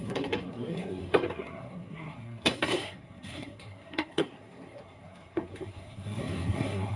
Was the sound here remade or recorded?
remade